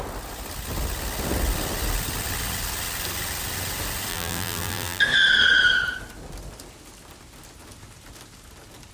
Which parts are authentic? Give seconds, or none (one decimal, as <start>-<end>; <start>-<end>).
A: 0.0-4.1; 5.0-8.9